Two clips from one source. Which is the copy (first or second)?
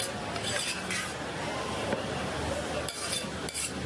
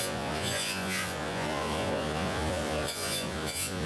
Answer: second